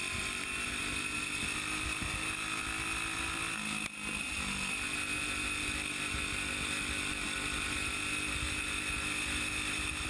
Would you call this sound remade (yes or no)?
no